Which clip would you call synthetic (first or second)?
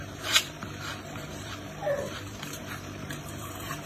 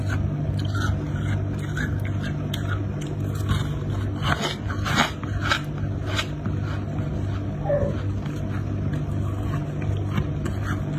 first